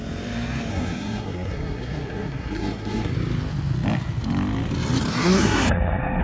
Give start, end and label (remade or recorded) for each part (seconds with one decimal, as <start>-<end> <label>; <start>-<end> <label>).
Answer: 0.0-0.7 recorded; 0.7-3.1 remade; 3.1-5.1 recorded; 5.1-6.2 remade